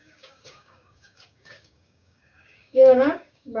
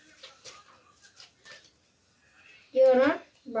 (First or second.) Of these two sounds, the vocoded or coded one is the first